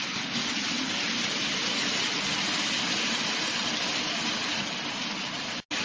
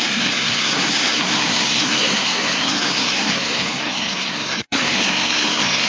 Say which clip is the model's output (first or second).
second